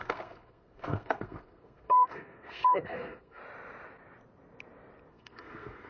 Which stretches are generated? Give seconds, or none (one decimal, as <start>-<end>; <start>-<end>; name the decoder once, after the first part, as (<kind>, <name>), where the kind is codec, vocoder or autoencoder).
0.0-3.4 (codec, SNAC); 5.1-5.9

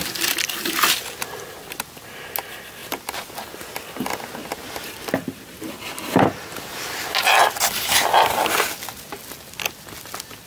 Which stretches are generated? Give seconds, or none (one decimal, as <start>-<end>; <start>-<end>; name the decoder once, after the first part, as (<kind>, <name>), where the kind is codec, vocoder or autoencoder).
none

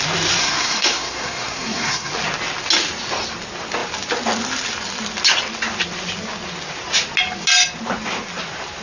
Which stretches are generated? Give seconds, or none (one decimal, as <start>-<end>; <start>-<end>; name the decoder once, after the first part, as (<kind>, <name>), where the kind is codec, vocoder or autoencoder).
0.4-2.1 (codec, SNAC)

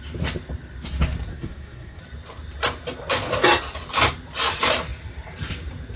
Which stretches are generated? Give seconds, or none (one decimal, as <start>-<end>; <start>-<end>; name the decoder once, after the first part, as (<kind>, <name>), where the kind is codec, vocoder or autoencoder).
1.3-2.0 (codec, SNAC)

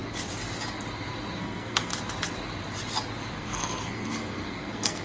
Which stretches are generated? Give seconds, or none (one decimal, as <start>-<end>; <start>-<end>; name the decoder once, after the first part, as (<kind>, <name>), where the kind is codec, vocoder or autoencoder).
1.4-1.9 (codec, SNAC); 3.3-5.0

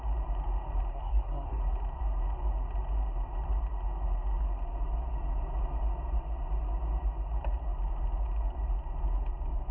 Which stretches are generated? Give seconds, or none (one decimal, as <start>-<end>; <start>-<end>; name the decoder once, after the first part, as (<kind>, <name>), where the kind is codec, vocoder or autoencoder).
0.9-1.6 (codec, SNAC)

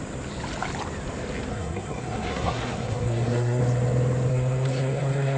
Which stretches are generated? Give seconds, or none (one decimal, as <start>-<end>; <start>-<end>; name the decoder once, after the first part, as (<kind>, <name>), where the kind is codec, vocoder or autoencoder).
1.5-3.6 (codec, SNAC); 4.3-5.4

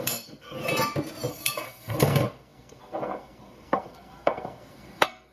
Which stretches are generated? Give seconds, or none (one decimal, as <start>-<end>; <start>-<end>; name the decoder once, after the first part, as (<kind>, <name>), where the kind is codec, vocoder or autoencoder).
0.0-0.6 (codec, SNAC); 1.3-5.3